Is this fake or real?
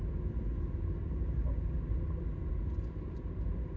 real